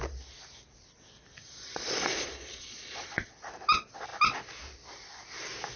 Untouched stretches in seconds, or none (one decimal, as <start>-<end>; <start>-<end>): 0.0-1.4; 3.3-5.8